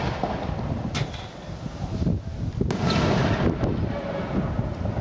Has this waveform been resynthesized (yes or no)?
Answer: no